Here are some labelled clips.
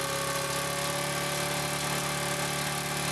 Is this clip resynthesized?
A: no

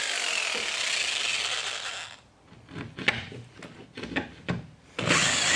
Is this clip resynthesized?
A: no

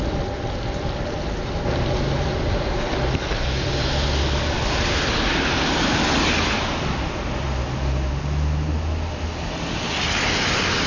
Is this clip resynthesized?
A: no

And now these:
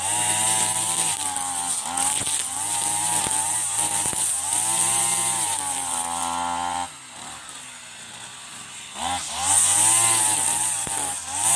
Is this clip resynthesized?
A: no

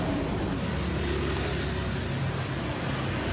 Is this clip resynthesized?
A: no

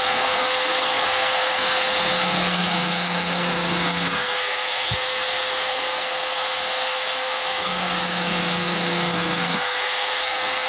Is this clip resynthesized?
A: yes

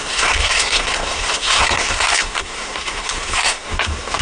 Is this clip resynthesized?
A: yes